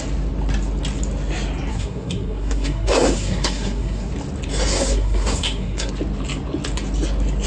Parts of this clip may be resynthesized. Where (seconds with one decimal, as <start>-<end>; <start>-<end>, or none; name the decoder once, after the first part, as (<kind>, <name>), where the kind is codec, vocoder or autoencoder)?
1.7-4.1 (codec, SNAC); 4.7-5.9

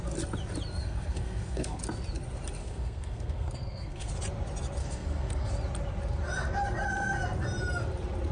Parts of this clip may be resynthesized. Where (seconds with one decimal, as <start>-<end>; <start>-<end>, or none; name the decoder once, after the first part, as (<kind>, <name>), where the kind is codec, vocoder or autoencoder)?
0.8-1.8 (codec, SNAC); 2.6-4.1; 4.8-5.5

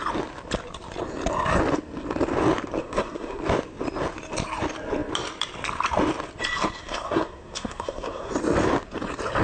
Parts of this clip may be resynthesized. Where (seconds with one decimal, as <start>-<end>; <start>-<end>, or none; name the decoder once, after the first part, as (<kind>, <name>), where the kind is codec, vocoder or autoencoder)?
2.8-3.4 (codec, SNAC); 6.8-8.3

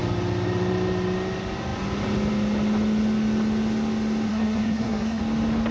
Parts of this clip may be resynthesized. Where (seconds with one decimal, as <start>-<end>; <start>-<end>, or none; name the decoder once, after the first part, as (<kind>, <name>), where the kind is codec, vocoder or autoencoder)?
4.3-5.2 (codec, SNAC)